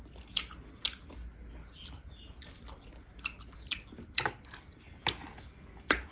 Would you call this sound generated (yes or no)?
no